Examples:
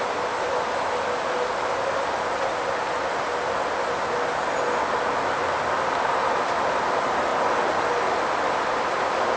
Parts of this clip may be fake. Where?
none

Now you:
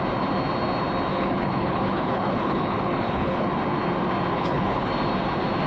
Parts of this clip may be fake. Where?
1.1-3.5 (codec, HILCodec); 4.3-4.9